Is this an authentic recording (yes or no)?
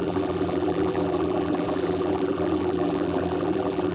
no